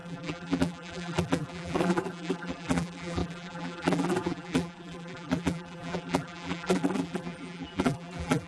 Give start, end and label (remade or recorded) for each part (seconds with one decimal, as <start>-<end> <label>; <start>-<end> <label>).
0.0-8.5 remade